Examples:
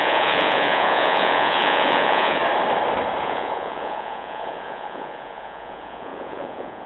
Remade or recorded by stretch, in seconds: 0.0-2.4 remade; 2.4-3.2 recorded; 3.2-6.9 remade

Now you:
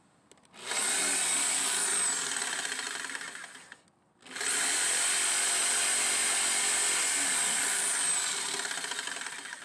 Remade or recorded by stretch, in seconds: 0.0-9.6 recorded

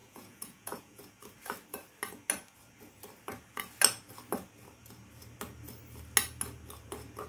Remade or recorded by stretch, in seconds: 0.0-1.0 remade; 1.0-7.3 recorded

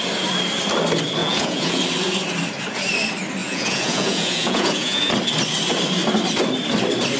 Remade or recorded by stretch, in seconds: 0.0-1.2 recorded; 1.2-1.8 remade; 1.8-3.4 recorded; 3.4-5.1 remade; 5.1-7.2 recorded

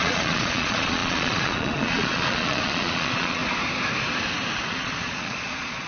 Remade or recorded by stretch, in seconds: 0.0-3.4 remade; 3.4-4.7 recorded; 4.7-5.9 remade

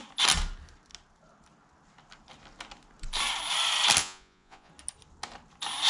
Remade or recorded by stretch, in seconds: 0.0-4.0 recorded; 4.0-4.7 remade; 4.7-5.9 recorded